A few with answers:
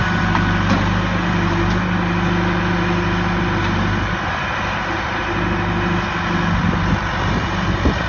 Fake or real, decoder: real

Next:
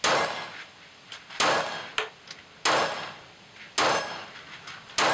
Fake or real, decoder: real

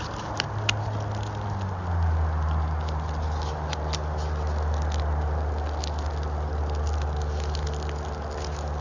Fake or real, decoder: real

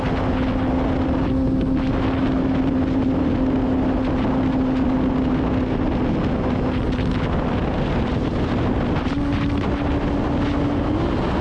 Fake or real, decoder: real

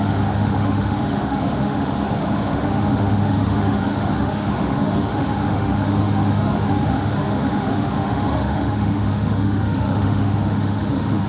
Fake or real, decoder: fake, autoencoder, DAC-VAE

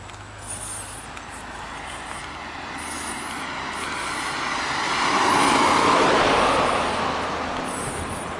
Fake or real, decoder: real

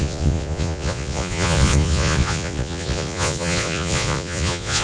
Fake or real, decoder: fake, vocoder, Vocos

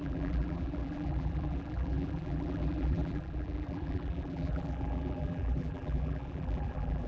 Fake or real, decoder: fake, vocoder, BigVGAN v2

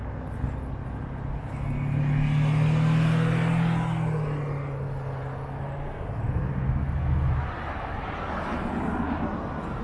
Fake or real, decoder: real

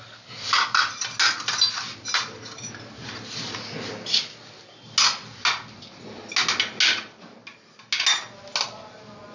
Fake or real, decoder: real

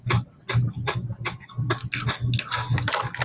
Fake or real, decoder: real